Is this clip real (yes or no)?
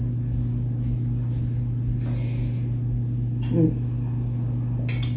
yes